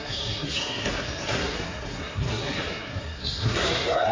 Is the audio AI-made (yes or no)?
yes